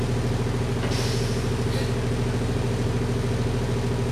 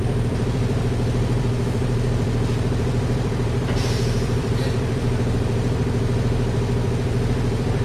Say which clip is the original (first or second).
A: first